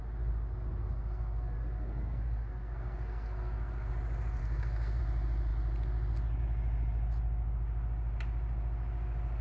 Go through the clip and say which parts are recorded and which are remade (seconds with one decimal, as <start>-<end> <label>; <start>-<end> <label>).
0.0-0.8 recorded; 0.8-3.9 remade; 3.9-4.4 recorded; 4.4-5.0 remade; 5.0-9.4 recorded

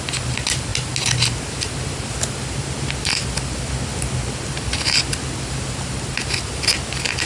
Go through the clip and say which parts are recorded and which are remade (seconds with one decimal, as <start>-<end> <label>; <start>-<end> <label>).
0.0-7.3 recorded

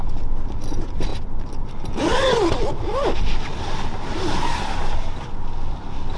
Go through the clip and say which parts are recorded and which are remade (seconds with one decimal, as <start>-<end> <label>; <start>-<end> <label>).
0.0-6.2 recorded

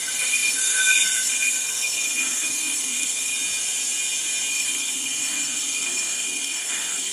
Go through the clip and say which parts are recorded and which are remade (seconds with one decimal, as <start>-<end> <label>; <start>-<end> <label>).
0.0-3.3 remade; 3.3-4.5 recorded; 4.5-7.1 remade

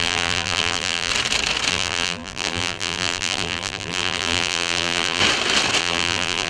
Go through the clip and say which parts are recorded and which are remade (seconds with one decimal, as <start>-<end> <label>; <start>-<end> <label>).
0.0-1.1 remade; 1.1-1.7 recorded; 1.7-5.2 remade; 5.2-5.8 recorded; 5.8-6.5 remade

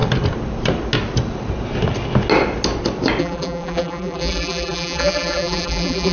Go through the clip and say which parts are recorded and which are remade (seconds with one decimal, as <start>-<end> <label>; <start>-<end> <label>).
0.0-3.2 recorded; 3.2-6.1 remade